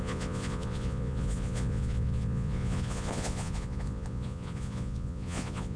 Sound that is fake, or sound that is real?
fake